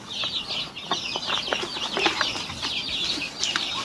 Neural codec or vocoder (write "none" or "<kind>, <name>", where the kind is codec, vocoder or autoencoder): none